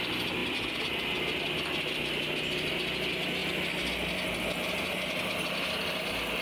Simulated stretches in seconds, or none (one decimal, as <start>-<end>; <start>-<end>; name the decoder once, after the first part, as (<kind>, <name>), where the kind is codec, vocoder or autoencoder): none